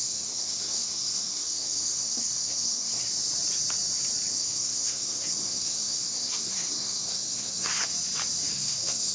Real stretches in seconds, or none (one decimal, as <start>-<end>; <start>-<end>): 3.1-4.3; 7.9-8.5